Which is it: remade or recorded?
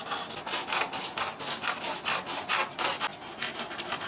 recorded